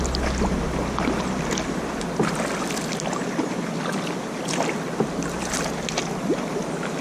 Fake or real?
real